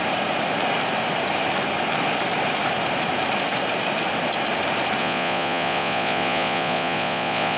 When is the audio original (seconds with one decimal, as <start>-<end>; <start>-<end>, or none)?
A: 0.0-5.0

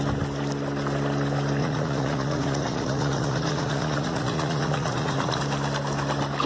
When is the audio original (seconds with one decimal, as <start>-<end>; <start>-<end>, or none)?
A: 0.0-1.6; 5.4-6.5

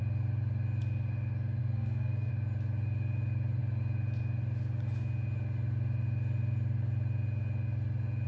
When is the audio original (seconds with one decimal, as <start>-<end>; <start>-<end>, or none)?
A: 0.0-1.6; 2.3-8.3

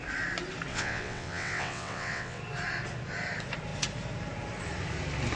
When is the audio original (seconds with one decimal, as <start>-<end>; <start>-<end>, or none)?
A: 0.0-0.7; 2.4-5.4

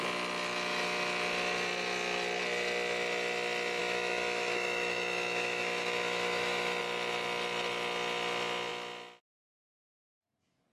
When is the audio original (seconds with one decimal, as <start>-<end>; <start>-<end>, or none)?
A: 0.0-3.8; 6.8-10.7

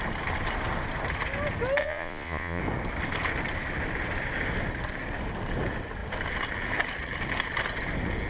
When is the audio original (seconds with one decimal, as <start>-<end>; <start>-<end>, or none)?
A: 0.0-1.8; 2.6-8.3

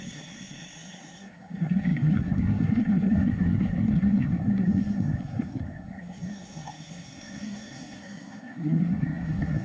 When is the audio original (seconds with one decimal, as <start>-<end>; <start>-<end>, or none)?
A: none